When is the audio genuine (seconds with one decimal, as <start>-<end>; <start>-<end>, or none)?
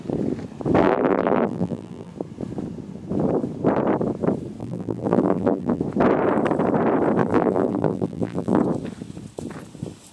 0.0-0.8; 2.1-4.6; 5.8-7.2; 8.6-10.1